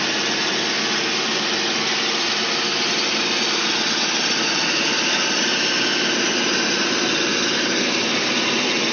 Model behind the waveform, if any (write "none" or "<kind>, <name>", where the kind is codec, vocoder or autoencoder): none